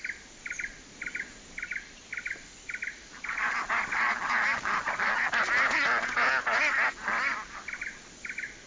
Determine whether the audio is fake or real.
real